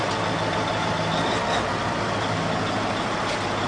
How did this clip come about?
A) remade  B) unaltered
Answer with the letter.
B